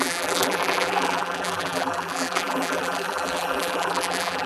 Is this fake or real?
fake